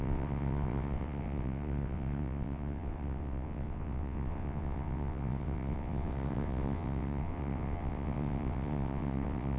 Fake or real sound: fake